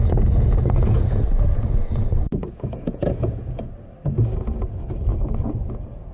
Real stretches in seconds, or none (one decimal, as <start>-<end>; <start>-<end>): 3.7-5.1